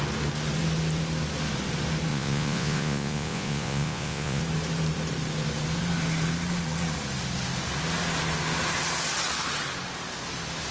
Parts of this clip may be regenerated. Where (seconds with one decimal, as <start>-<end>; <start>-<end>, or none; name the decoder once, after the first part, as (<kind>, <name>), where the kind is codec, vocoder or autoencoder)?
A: 2.1-4.4 (vocoder, Vocos)